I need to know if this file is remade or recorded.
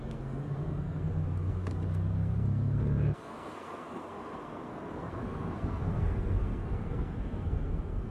remade